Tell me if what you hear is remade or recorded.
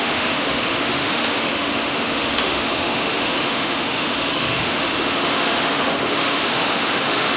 remade